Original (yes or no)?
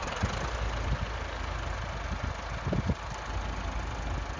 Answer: yes